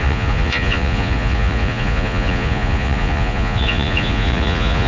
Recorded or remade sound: remade